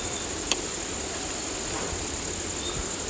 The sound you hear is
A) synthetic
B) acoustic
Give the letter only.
B